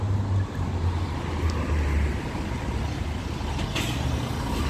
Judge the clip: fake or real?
real